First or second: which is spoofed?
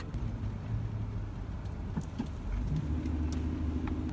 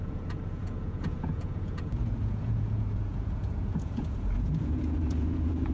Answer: second